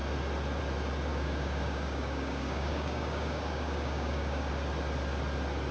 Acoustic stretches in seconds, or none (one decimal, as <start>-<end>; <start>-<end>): 0.0-1.1; 4.5-5.7